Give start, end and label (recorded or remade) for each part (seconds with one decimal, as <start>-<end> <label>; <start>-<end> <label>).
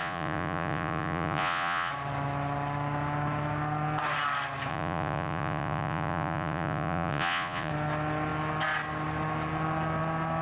0.0-1.9 remade; 1.9-4.7 recorded; 4.7-7.7 remade; 7.7-10.4 recorded